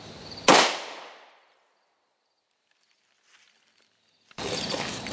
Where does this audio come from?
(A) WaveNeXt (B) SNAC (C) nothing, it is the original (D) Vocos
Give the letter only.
C